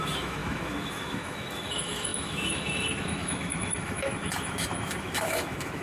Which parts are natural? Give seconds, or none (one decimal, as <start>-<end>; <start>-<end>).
none